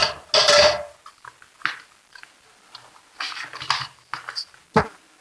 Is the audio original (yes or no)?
yes